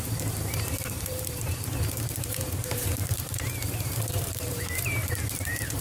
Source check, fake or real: fake